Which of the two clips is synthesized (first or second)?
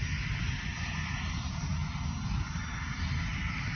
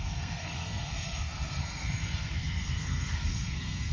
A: second